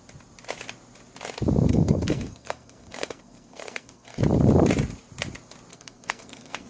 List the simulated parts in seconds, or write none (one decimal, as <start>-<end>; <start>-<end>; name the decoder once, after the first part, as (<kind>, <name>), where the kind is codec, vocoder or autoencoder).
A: 1.7-4.2 (codec, SNAC); 5.7-6.7